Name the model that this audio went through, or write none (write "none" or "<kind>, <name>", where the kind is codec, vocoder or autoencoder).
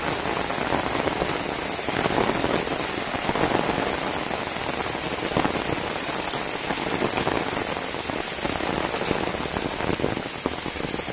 none